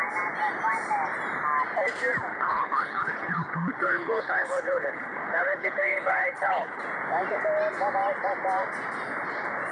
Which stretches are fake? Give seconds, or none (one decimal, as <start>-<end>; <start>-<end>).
2.3-6.8